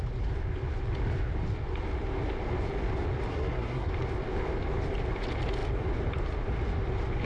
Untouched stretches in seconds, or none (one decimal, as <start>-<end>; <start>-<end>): 0.0-3.3; 3.9-7.3